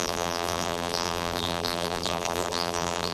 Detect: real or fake fake